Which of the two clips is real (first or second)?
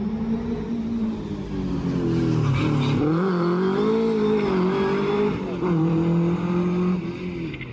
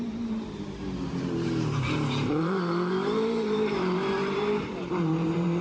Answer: first